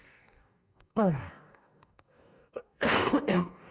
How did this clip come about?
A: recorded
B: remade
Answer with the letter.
B